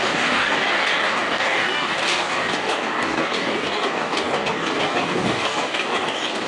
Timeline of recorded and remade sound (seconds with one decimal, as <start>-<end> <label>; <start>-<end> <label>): 0.0-6.5 remade